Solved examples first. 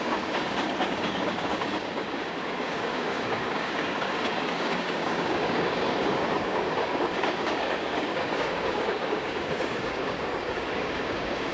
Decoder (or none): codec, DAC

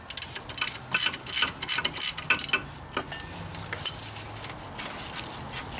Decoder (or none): none